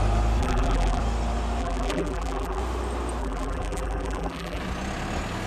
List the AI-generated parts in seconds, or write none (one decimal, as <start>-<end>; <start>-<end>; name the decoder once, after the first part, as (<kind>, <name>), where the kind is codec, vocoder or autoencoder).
0.4-1.0 (vocoder, BigVGAN v2); 1.6-2.6; 3.2-4.6